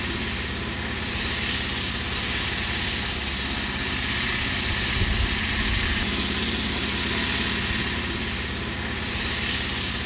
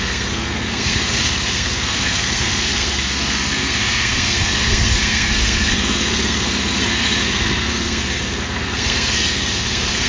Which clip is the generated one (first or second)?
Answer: second